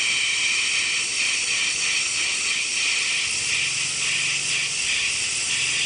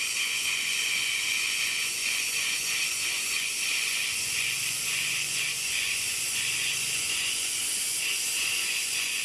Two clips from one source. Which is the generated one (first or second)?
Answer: second